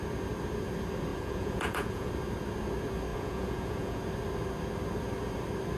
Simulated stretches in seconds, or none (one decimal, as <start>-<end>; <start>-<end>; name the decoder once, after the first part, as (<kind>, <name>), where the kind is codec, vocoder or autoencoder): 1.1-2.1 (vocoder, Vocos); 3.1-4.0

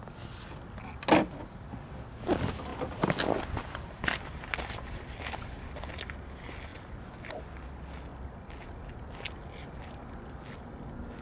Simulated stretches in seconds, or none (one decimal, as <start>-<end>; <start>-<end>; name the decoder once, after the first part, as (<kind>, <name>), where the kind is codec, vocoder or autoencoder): none

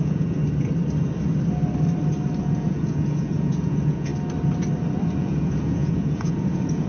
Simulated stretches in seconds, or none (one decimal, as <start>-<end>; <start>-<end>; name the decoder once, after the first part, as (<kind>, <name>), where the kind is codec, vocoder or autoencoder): 0.0-0.4 (vocoder, Vocos); 2.4-4.1; 5.2-6.9